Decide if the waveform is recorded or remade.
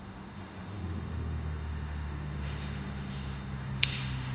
remade